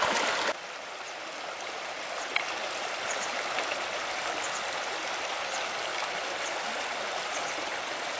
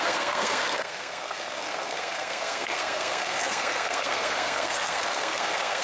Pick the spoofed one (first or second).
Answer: second